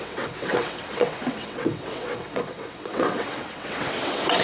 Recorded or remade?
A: remade